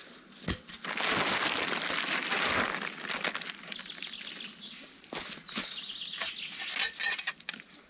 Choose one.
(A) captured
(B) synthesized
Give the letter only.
A